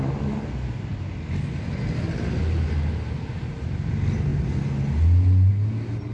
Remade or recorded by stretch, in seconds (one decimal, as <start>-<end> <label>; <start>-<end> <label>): 0.0-6.1 recorded